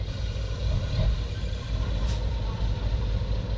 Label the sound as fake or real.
real